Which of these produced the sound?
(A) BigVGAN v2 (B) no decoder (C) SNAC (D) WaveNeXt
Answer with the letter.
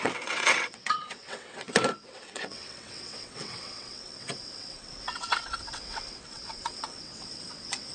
D